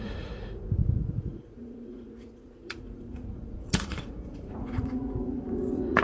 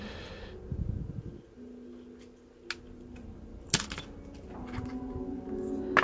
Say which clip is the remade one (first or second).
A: first